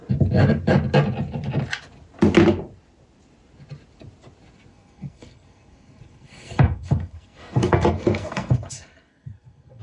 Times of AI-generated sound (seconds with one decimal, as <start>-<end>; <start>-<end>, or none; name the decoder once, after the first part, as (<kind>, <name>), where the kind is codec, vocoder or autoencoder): 4.7-9.8 (codec, SNAC)